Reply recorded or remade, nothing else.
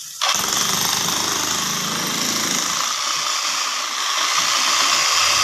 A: recorded